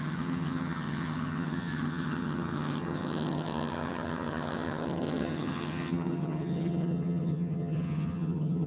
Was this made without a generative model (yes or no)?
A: no